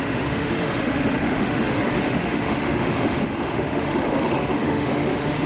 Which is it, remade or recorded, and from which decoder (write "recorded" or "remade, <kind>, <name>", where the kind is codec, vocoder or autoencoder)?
remade, autoencoder, DAC-VAE